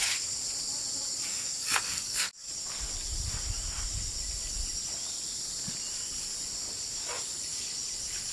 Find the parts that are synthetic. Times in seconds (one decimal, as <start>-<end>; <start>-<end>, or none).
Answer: 1.3-2.5

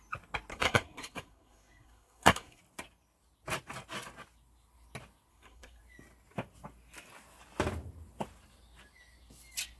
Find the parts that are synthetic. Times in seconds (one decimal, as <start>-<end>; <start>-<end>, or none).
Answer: 0.5-2.6; 5.3-5.8

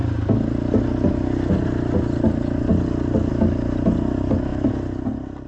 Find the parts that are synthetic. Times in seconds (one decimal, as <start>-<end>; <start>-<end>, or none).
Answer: none

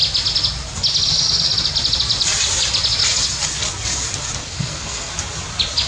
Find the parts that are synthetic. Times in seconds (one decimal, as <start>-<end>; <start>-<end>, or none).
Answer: 4.4-5.1

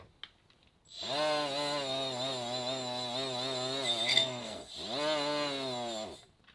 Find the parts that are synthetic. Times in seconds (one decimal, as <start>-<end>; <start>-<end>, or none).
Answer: 4.1-4.7

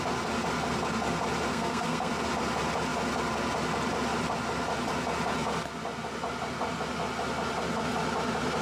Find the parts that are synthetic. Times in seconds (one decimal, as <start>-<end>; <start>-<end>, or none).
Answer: 1.5-2.1

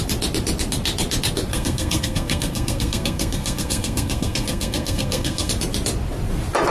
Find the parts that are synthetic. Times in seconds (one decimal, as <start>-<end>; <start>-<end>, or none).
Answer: 1.5-5.5